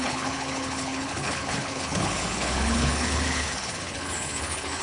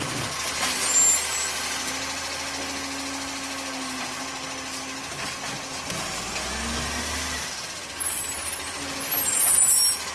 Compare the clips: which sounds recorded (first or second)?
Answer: second